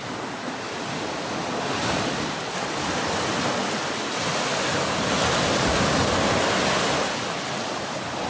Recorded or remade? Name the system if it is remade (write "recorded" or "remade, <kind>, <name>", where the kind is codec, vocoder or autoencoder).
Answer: recorded